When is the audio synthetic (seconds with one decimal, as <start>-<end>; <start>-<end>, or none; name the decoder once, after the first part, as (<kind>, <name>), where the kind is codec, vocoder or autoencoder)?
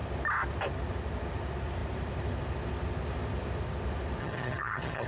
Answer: 4.2-5.1 (vocoder, HiFi-GAN)